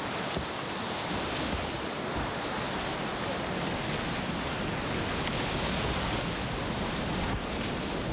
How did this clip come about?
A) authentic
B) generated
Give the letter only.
A